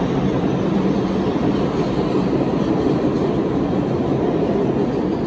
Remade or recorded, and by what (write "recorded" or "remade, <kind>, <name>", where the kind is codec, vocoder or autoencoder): recorded